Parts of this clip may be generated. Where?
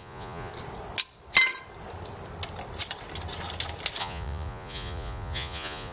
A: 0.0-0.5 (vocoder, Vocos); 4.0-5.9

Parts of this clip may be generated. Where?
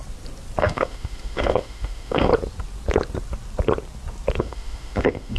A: 0.6-2.3 (autoencoder, DAC-VAE); 4.4-5.4